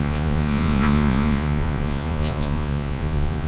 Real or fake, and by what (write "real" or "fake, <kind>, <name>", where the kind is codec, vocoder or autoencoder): fake, vocoder, Vocos